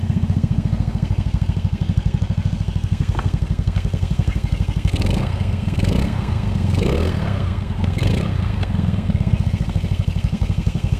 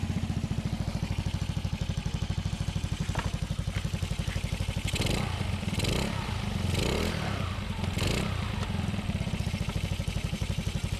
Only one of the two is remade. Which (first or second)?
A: first